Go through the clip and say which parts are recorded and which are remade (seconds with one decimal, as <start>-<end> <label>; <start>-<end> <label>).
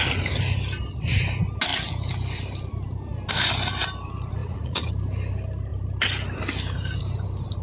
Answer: 0.0-4.4 recorded; 4.4-4.9 remade; 4.9-7.6 recorded